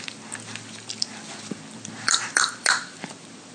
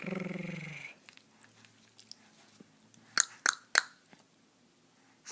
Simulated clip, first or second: first